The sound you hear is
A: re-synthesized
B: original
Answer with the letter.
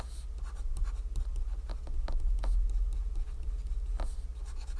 B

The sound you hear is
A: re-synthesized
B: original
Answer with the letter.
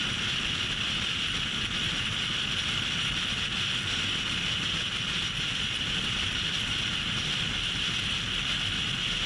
B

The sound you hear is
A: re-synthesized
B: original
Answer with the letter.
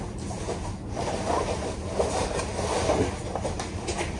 B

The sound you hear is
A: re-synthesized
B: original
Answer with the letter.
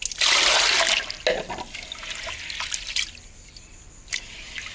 B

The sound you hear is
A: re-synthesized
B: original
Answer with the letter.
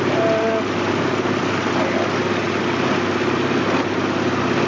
B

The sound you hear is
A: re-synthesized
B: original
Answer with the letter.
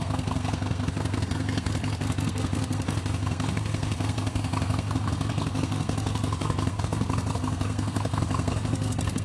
A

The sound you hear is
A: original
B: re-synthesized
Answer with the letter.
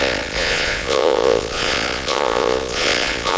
B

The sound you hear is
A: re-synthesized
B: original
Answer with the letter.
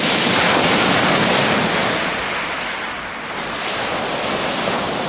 B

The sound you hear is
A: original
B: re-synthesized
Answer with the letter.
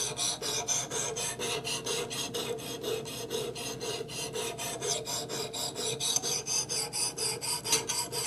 A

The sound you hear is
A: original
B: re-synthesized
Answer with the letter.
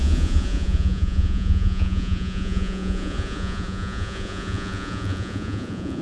B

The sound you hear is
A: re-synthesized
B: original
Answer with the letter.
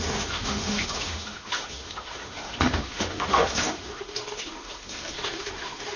A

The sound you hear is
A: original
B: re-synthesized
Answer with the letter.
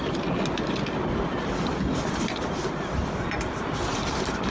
A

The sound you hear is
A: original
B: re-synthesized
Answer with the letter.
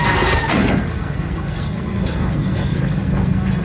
B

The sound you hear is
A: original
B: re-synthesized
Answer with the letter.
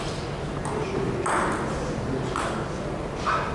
A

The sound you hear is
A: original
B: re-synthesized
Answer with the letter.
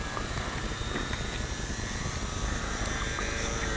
A